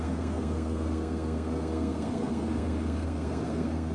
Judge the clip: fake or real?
fake